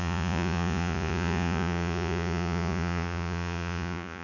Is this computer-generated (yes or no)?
yes